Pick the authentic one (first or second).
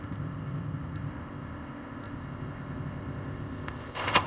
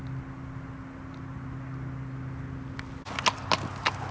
second